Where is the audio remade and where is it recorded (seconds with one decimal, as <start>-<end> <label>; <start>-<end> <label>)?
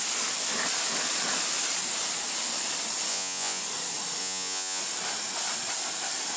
0.0-3.1 recorded; 3.1-3.6 remade; 3.6-4.2 recorded; 4.2-4.8 remade; 4.8-6.4 recorded